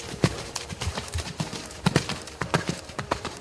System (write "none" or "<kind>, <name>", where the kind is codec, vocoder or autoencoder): vocoder, BigVGAN v2